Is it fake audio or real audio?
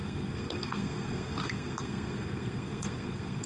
fake